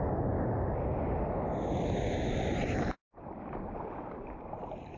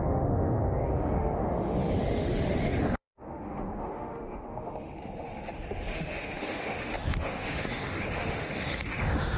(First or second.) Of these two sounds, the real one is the first